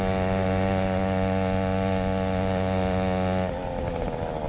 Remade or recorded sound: recorded